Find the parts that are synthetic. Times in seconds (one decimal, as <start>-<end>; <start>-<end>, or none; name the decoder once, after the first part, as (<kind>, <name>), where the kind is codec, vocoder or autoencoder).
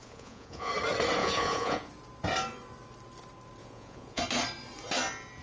0.0-0.7 (vocoder, Vocos); 1.2-1.9; 3.6-4.2